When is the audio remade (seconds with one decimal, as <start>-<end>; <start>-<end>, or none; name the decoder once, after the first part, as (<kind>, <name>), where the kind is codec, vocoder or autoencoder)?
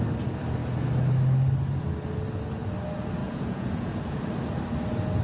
3.2-4.2 (vocoder, Vocos)